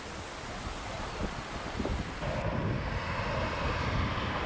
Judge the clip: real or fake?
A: real